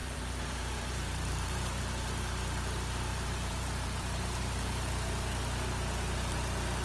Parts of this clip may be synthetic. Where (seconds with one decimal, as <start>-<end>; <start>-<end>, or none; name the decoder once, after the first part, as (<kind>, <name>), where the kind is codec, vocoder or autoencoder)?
0.0-1.8 (vocoder, BigVGAN v2); 3.1-4.9